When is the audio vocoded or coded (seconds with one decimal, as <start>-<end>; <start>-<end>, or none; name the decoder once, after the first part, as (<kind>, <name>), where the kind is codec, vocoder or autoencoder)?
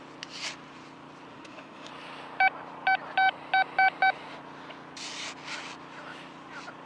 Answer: 1.3-1.9 (autoencoder, DAC-VAE)